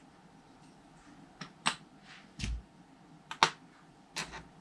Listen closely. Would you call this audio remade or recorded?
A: recorded